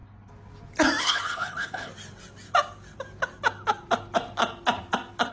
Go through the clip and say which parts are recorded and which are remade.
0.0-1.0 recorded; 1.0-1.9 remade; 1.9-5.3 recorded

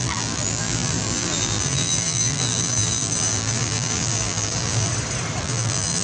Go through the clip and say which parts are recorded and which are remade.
0.0-4.9 remade; 4.9-5.4 recorded; 5.4-6.0 remade